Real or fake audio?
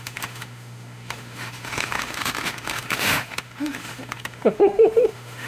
fake